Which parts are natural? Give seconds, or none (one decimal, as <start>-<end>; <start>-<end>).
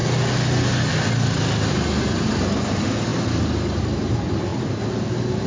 0.0-5.5